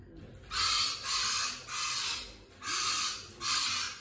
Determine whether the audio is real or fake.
real